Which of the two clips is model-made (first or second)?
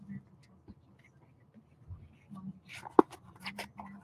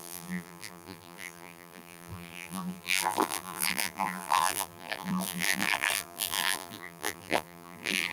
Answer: second